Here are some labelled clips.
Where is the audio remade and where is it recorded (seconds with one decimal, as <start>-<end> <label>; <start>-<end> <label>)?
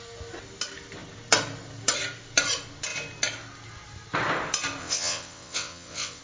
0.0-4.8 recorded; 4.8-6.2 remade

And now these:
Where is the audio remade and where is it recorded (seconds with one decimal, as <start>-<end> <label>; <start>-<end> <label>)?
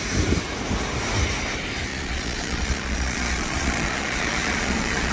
0.0-1.9 recorded; 1.9-5.1 remade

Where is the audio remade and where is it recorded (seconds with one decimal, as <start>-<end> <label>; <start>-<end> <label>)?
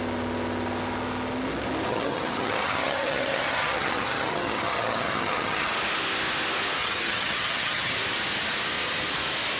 0.0-1.9 recorded; 1.9-5.7 remade; 5.7-6.8 recorded; 6.8-7.9 remade; 7.9-9.6 recorded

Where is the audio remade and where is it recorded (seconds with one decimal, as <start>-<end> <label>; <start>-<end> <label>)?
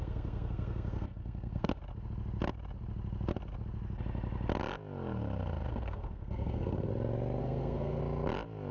0.0-1.8 remade; 1.8-5.7 recorded; 5.7-6.9 remade; 6.9-7.4 recorded; 7.4-8.0 remade; 8.0-8.7 recorded